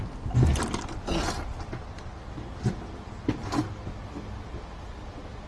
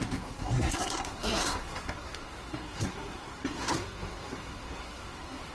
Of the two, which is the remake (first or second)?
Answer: second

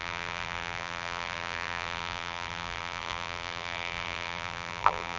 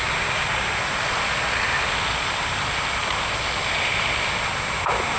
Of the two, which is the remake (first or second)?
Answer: first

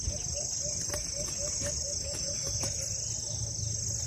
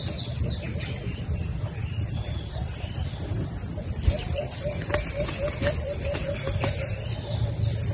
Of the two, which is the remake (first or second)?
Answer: second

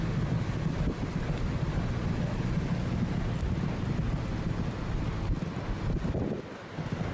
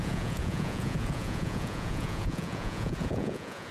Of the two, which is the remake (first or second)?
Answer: second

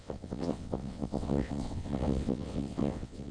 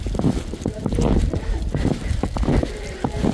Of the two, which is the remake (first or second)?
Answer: first